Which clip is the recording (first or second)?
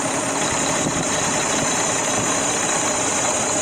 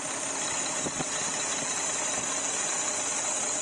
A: second